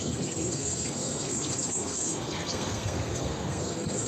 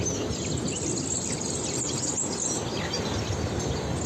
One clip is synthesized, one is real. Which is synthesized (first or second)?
first